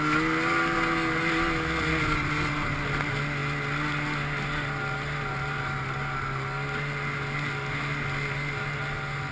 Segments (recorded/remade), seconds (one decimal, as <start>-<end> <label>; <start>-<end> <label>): 0.0-9.3 recorded